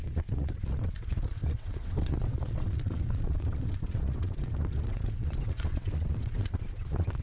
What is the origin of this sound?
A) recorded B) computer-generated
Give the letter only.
B